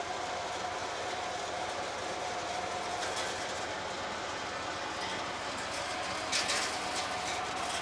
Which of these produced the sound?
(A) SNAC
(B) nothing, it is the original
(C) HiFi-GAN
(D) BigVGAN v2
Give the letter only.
B